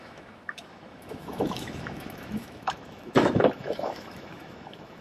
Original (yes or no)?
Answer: no